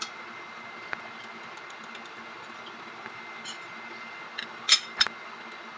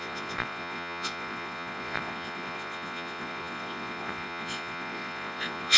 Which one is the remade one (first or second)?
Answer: second